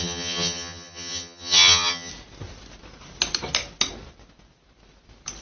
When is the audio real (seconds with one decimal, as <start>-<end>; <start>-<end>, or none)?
2.1-5.4